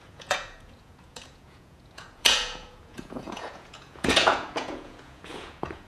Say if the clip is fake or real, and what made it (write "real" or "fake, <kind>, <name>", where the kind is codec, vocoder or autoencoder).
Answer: fake, vocoder, Vocos